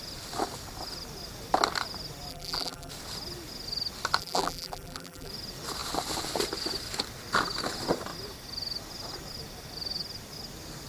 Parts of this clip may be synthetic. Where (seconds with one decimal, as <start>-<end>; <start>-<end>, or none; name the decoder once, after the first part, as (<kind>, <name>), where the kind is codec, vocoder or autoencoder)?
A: 2.3-2.9 (vocoder, BigVGAN v2); 4.2-5.3